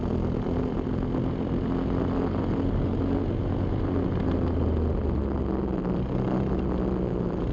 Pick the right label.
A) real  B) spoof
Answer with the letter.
A